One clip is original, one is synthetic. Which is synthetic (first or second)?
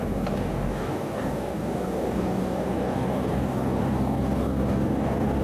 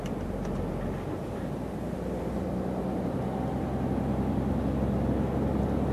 first